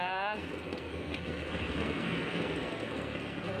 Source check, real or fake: fake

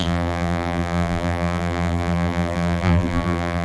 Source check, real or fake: fake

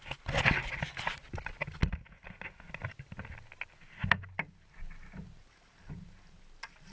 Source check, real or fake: real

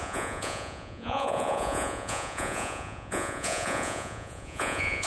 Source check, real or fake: fake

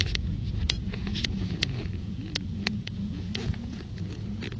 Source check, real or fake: fake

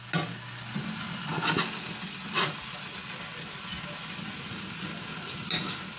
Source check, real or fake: real